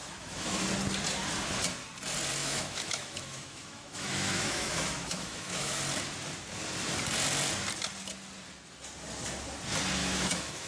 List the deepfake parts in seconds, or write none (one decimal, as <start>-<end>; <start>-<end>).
0.0-0.6; 2.4-5.8; 10.0-10.7